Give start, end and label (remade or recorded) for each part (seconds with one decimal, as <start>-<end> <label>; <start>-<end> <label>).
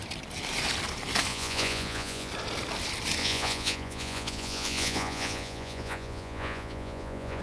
0.0-1.3 recorded; 1.3-2.3 remade; 2.3-3.2 recorded; 3.2-7.4 remade